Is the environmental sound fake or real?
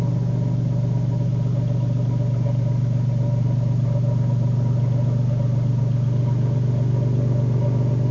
real